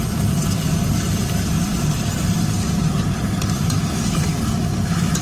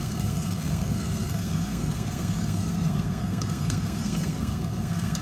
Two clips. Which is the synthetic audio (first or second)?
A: second